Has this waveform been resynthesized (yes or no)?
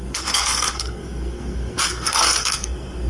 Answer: yes